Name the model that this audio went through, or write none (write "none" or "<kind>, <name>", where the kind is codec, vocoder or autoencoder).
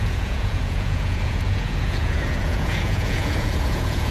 vocoder, Vocos